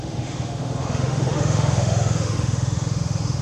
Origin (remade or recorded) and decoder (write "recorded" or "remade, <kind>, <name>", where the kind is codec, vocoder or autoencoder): remade, autoencoder, DAC-VAE